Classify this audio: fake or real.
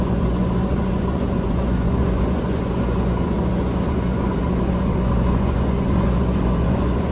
fake